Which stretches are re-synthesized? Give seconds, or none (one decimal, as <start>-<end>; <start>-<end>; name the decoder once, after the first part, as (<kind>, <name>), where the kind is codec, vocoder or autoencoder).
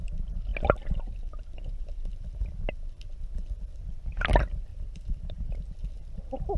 4.7-5.6 (vocoder, BigVGAN v2)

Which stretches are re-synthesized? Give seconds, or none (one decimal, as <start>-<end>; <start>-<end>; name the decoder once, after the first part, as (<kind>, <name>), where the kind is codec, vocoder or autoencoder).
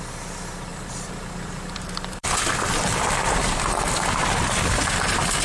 0.7-3.7 (vocoder, BigVGAN v2)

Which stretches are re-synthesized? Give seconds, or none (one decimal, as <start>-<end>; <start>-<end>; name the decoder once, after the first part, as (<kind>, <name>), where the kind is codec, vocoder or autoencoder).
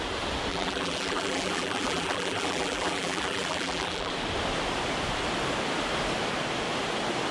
0.5-4.1 (vocoder, BigVGAN v2)